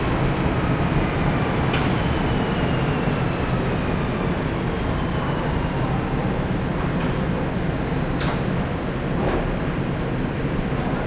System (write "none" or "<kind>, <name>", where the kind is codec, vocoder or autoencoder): none